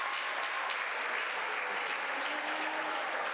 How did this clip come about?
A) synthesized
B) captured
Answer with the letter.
B